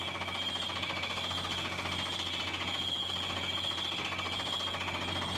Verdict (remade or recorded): recorded